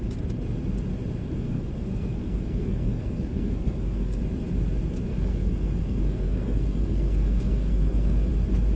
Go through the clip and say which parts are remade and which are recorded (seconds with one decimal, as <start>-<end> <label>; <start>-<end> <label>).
0.0-1.2 recorded; 1.2-4.2 remade; 4.2-5.1 recorded; 5.1-8.3 remade; 8.3-8.8 recorded